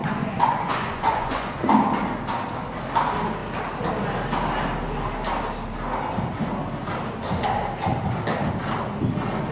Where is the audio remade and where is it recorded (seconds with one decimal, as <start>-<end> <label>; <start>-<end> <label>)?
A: 0.0-1.7 remade; 1.7-9.5 recorded